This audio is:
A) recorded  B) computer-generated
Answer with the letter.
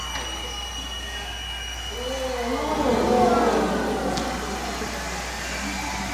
A